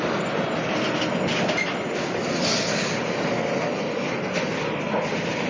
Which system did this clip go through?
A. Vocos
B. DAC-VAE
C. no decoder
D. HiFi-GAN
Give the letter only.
C